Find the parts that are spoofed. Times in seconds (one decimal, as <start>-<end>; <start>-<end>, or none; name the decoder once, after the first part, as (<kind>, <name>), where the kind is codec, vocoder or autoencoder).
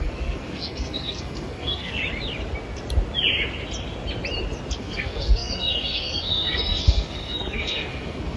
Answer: 0.0-2.0 (codec, SNAC); 4.8-8.4